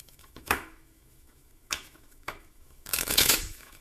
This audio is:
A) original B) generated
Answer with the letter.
B